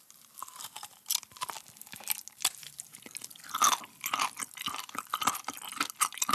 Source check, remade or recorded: recorded